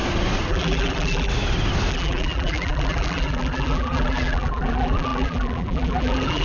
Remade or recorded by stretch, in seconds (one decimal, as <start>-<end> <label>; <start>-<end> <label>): 0.0-0.5 recorded; 0.5-1.3 remade; 1.3-1.9 recorded; 1.9-6.4 remade